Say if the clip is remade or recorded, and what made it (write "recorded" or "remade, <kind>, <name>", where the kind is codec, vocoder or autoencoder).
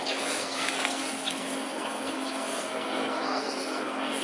remade, codec, SNAC